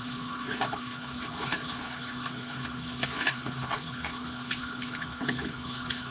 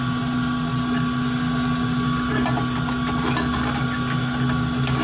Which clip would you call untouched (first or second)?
second